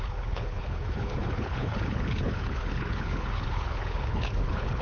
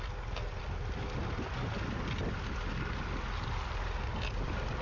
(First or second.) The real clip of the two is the second